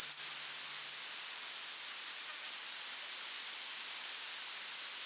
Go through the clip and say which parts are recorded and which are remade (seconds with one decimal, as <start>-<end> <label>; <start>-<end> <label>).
0.0-5.1 recorded